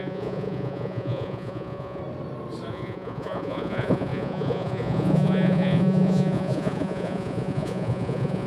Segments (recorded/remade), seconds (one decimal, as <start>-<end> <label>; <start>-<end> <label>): 0.0-2.0 remade; 2.0-2.7 recorded; 2.7-8.5 remade